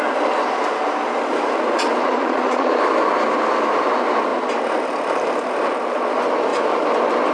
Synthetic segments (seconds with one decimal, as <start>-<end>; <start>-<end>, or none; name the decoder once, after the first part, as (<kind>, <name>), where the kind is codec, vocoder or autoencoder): 2.0-2.8 (vocoder, Vocos)